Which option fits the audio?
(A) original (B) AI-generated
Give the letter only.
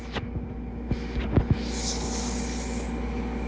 A